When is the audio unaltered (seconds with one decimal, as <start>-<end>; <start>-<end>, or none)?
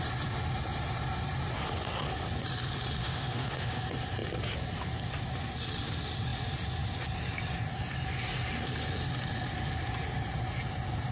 0.0-3.0; 3.8-11.1